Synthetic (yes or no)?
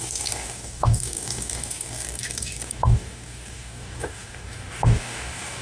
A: yes